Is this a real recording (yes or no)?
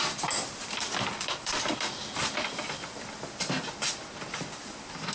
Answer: no